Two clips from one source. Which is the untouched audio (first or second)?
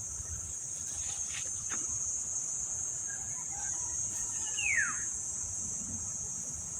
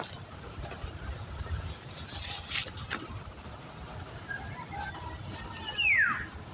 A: second